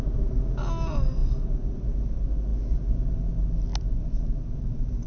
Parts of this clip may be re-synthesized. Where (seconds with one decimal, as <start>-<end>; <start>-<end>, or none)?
none